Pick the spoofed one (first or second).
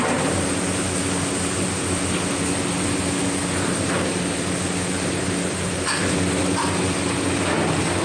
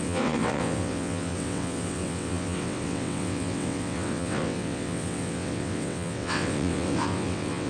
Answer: second